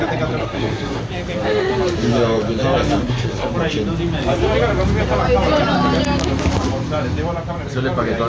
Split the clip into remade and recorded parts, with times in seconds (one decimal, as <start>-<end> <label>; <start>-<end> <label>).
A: 0.0-0.4 recorded; 0.4-1.0 remade; 1.0-3.0 recorded; 3.0-3.5 remade; 3.5-8.3 recorded